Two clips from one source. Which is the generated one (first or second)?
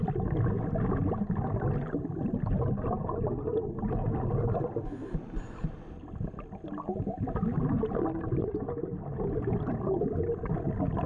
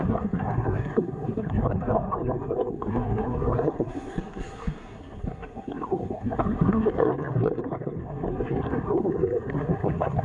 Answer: second